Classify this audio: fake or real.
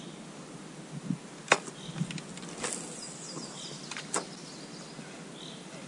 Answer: real